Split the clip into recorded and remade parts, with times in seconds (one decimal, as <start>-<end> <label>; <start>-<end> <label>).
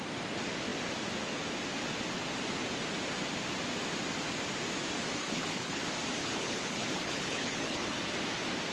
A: 0.0-5.2 recorded; 5.2-5.8 remade; 5.8-6.2 recorded; 6.2-8.0 remade; 8.0-8.7 recorded